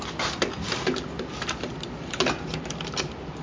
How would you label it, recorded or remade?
recorded